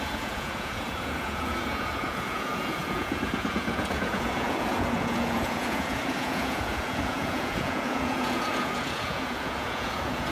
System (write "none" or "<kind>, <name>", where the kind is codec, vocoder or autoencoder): vocoder, Vocos